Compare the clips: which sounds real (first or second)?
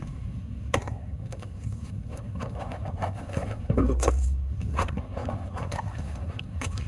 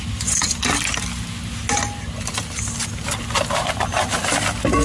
second